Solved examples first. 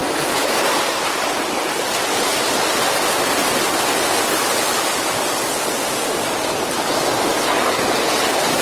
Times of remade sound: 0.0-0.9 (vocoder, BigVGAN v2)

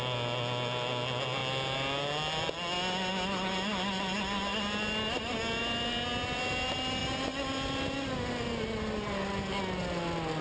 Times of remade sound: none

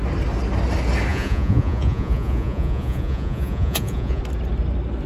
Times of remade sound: 1.1-4.2 (vocoder, Vocos)